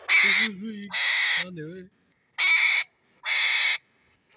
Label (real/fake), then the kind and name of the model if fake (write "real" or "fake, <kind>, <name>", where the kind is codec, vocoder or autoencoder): real